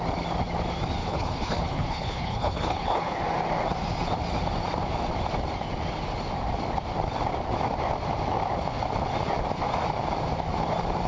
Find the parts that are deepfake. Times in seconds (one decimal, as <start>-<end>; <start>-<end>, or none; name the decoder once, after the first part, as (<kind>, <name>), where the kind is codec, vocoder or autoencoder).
1.0-3.2 (codec, HILCodec)